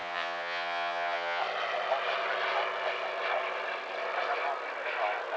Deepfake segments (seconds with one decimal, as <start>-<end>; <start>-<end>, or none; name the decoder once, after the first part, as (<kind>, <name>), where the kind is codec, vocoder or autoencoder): 0.0-1.4 (vocoder, WaveNeXt)